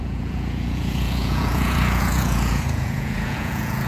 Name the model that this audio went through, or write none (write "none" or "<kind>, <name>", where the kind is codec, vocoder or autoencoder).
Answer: vocoder, Vocos